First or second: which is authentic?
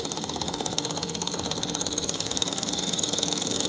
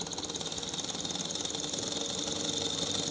second